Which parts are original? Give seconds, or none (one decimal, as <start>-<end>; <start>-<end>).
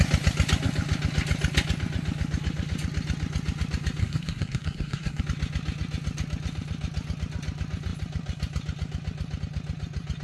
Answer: 0.0-4.0; 5.2-10.2